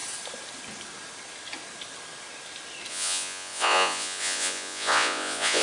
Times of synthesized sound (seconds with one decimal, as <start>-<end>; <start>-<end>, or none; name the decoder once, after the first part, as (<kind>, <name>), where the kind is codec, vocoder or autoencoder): 2.9-5.6 (vocoder, Vocos)